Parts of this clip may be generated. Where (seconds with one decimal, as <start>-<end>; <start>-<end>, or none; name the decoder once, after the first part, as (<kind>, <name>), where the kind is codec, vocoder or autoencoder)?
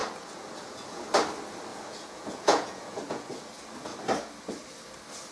0.0-1.0 (vocoder, Vocos); 1.7-3.5